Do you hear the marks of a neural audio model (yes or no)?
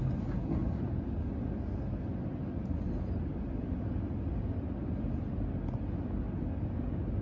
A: no